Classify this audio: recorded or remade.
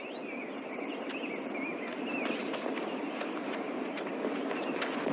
recorded